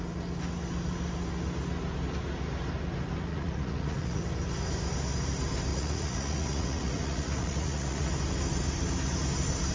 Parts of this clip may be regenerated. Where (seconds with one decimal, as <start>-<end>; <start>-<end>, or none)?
3.3-4.2; 5.7-8.1